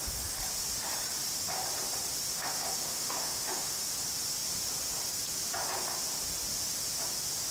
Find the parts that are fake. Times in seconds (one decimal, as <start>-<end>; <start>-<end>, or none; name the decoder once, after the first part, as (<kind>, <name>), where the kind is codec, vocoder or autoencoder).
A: 2.3-3.8 (autoencoder, DAC-VAE)